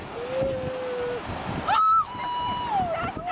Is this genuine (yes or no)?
yes